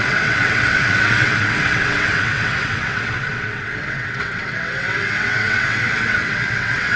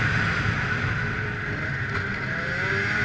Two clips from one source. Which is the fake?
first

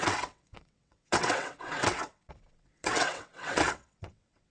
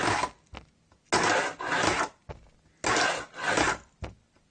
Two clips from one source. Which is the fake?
first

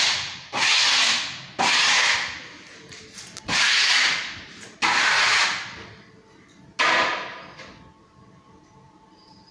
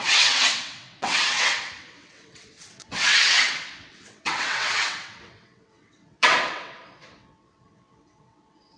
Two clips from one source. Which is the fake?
second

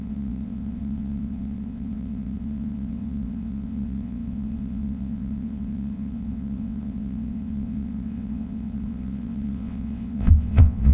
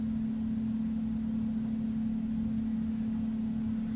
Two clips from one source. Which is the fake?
first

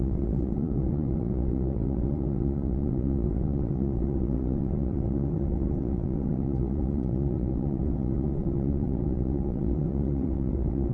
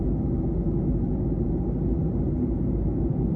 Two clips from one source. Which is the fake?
first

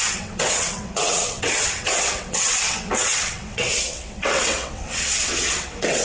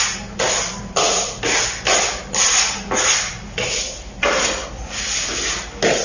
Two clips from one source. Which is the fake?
first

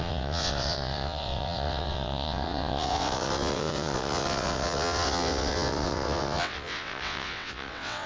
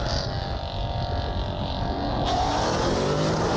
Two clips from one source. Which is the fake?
first